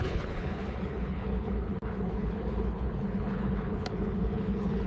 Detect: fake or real fake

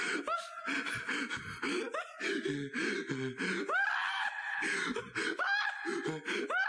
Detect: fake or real real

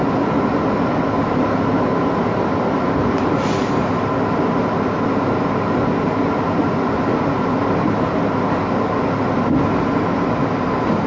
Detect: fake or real real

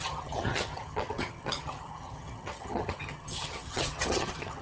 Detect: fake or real fake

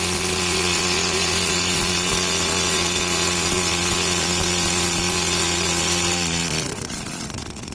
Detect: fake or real fake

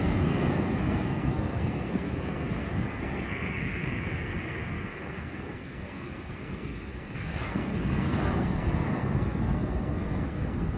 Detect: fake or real fake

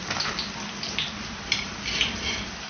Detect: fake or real real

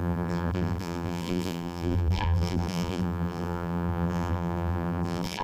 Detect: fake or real fake